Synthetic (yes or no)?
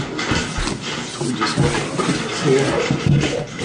no